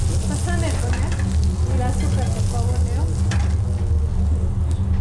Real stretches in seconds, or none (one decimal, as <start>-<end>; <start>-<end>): 0.0-5.0